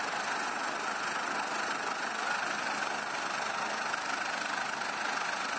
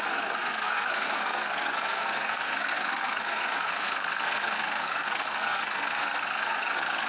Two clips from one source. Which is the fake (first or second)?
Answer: second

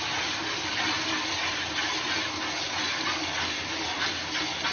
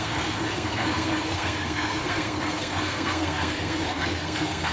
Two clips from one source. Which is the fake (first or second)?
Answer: second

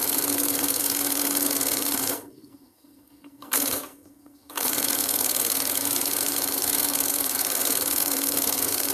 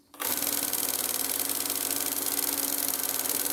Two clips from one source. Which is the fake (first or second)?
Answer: first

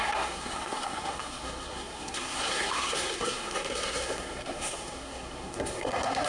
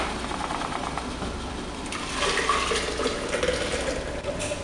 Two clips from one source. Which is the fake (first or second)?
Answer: first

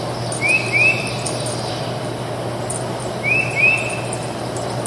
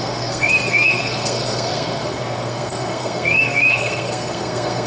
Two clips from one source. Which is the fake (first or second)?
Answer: second